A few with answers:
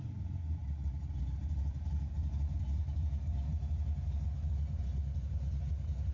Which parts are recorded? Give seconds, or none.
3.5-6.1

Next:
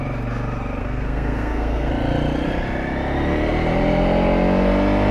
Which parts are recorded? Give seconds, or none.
0.0-0.8; 1.9-5.1

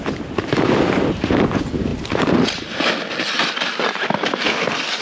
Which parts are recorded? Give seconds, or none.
0.0-5.0